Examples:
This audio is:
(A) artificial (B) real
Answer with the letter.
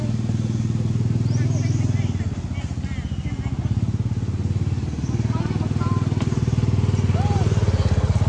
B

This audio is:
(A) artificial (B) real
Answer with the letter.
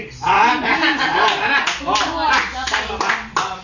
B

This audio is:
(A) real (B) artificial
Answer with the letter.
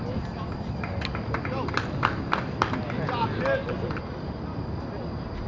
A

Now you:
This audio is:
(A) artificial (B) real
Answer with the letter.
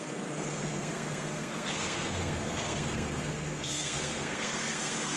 A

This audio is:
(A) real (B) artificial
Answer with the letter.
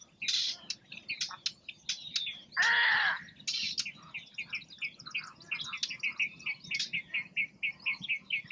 A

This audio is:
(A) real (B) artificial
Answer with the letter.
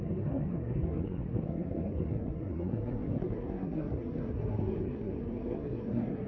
B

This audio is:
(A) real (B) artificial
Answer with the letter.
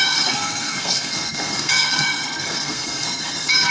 B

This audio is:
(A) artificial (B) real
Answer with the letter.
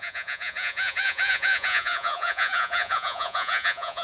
A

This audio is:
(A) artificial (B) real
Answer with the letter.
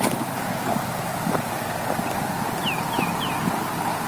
B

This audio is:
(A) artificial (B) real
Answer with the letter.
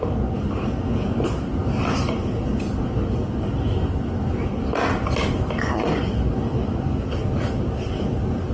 B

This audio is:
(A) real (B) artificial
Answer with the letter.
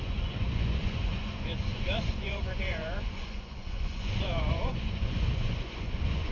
B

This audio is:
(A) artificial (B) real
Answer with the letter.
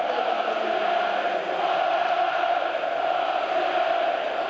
B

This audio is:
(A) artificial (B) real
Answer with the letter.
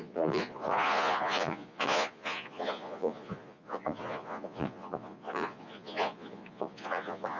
A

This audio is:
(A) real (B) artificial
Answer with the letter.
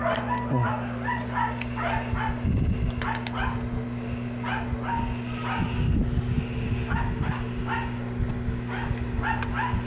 A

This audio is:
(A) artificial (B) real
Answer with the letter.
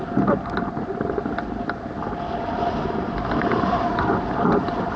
B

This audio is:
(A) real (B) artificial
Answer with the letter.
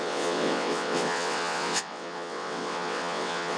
B